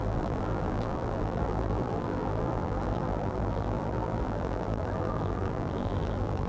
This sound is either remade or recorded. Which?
remade